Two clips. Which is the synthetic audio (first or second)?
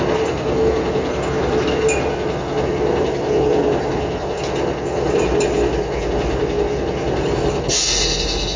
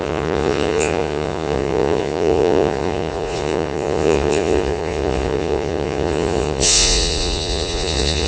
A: second